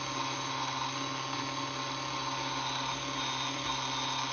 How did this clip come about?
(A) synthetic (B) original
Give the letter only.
B